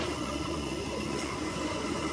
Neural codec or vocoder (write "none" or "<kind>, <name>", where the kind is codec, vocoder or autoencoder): vocoder, Vocos